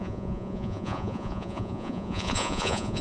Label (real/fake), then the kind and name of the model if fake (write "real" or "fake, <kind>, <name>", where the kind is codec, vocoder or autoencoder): fake, vocoder, Vocos